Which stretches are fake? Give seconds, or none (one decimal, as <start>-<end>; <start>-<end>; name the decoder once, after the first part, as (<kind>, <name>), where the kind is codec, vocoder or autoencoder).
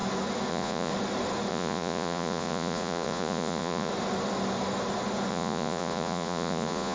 0.5-0.9 (vocoder, Vocos); 1.5-3.9; 5.3-6.9